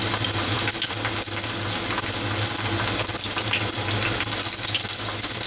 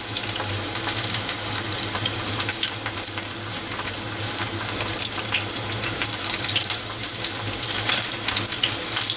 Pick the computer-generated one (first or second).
second